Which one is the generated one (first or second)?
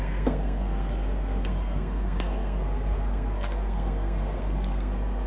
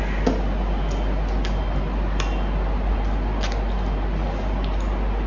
first